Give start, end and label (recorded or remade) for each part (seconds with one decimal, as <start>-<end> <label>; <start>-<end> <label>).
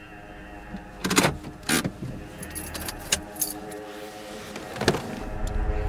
0.0-1.0 recorded; 1.0-4.5 remade; 4.5-5.9 recorded